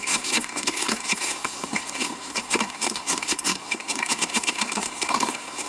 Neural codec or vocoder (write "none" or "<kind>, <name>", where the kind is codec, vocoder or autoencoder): codec, SNAC